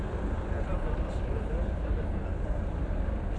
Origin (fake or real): real